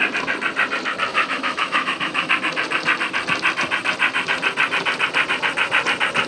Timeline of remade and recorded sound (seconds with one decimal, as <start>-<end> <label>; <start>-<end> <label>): 0.0-1.1 recorded; 1.1-2.3 remade; 2.3-6.3 recorded